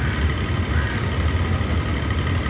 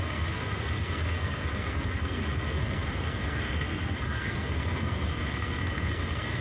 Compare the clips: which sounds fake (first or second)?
second